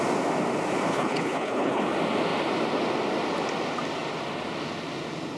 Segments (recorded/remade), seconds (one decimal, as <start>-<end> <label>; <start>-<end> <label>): 0.0-0.9 recorded; 0.9-1.8 remade; 1.8-5.4 recorded